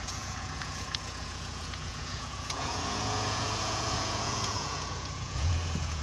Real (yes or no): no